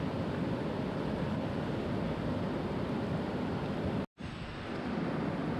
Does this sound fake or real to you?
real